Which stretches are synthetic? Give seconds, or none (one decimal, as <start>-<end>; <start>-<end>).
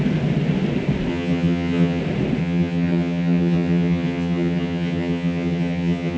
1.1-2.0; 2.4-6.2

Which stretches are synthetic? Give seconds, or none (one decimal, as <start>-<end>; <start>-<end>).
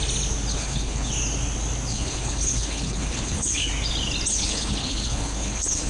0.5-1.1; 1.9-3.7; 4.3-5.9